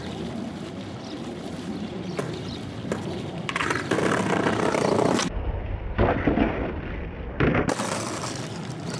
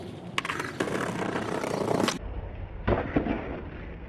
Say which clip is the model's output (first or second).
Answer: first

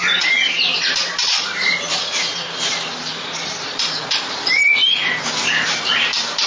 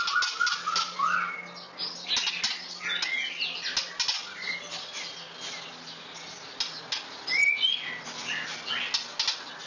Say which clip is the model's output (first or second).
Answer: first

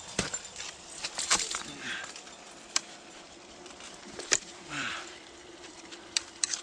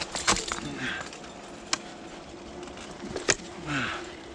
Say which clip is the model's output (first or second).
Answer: first